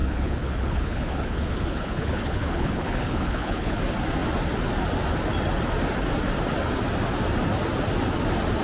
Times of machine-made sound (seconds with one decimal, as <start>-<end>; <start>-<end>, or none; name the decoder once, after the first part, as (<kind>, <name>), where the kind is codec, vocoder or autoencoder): 0.0-3.8 (codec, HILCodec)